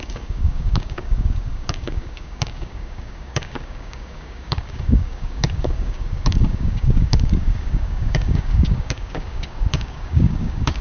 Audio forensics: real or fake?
fake